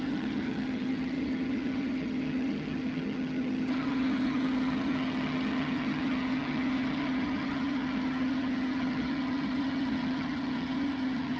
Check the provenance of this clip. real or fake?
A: fake